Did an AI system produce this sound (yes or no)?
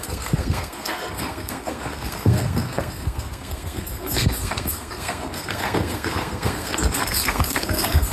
yes